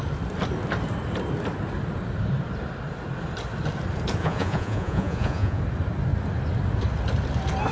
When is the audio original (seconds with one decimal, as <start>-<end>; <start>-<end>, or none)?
0.0-4.2; 5.6-7.7

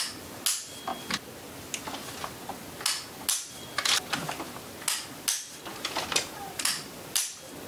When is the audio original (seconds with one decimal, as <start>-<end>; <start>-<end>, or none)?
0.0-7.7

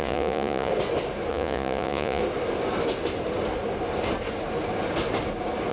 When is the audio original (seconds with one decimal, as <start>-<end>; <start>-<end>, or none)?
0.7-1.3; 2.2-5.7

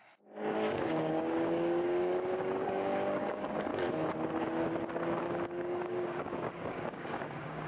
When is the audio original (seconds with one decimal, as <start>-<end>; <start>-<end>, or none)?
3.7-5.2

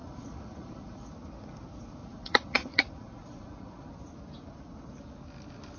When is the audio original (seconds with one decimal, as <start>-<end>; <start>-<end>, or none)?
1.1-2.0; 3.9-5.8